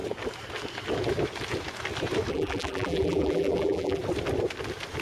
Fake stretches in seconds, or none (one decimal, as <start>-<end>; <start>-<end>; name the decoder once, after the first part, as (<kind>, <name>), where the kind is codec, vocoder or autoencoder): 2.3-4.0 (vocoder, BigVGAN v2)